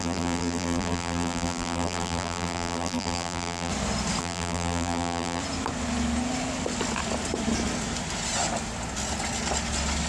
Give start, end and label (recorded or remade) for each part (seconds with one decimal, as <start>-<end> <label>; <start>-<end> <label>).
0.0-3.7 remade; 3.7-4.2 recorded; 4.2-5.4 remade; 5.4-10.1 recorded